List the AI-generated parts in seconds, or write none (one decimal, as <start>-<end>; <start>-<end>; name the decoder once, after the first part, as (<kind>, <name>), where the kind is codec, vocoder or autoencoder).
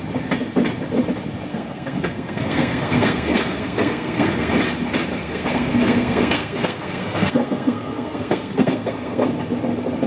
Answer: 1.5-4.5 (codec, SNAC); 5.2-9.3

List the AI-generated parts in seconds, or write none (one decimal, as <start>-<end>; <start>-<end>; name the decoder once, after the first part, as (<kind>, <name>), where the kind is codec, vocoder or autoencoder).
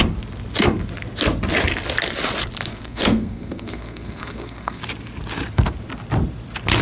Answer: 2.7-4.8 (codec, SNAC)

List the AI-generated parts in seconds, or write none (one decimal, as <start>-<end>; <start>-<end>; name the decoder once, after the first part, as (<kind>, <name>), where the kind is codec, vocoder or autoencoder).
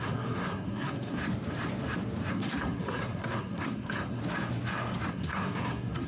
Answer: 0.0-1.2 (codec, SNAC); 2.3-4.2; 5.1-6.1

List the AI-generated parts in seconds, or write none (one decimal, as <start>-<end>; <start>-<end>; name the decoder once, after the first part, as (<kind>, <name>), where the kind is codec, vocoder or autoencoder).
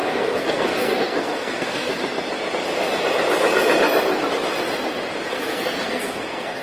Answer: 0.0-1.9 (codec, SNAC); 5.3-6.6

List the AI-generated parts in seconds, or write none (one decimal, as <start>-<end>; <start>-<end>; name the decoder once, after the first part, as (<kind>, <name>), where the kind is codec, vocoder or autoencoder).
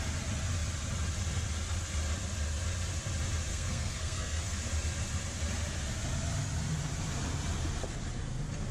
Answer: 3.5-4.6 (codec, SNAC)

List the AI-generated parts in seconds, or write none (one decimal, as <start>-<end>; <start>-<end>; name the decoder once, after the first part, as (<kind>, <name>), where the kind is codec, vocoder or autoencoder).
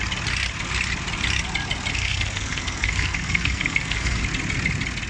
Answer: 1.9-4.2 (codec, SNAC)